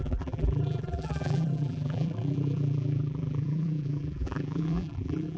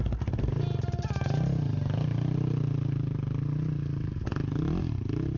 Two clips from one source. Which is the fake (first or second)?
first